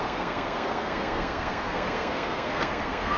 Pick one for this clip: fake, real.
fake